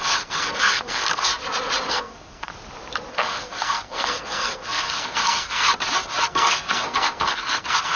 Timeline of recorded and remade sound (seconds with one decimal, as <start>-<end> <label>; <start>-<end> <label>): 0.0-1.3 remade; 1.3-1.9 recorded; 1.9-2.5 remade; 2.5-3.1 recorded; 3.1-5.7 remade; 5.7-6.2 recorded; 6.2-8.0 remade